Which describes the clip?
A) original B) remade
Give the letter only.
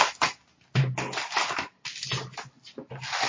A